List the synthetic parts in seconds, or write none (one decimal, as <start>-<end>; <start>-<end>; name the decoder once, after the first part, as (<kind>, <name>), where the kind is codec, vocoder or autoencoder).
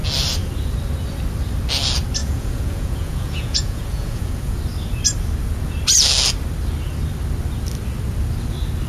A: 2.2-4.6 (vocoder, Vocos)